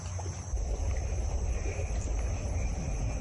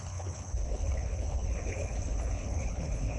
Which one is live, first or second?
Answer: first